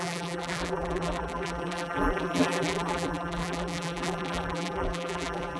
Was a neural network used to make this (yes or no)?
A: yes